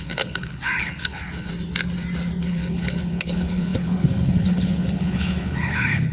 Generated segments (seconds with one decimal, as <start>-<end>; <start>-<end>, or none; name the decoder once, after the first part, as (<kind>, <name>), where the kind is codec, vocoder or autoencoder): 0.0-1.5 (codec, HILCodec); 2.4-6.1